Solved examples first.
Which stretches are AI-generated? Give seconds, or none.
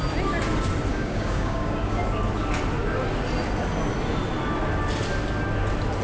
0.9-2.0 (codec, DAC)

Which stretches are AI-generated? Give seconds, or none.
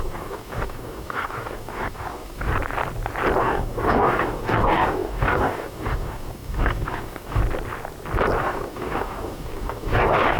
0.0-2.5 (codec, DAC); 3.4-7.4; 8.4-10.4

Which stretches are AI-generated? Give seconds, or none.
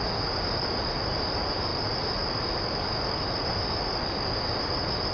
none